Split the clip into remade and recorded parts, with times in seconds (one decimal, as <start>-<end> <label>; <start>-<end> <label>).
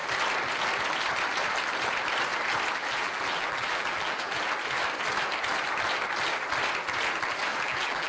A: 0.0-2.8 recorded; 2.8-4.5 remade; 4.5-7.5 recorded; 7.5-8.1 remade